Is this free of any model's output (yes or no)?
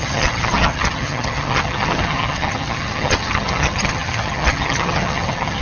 no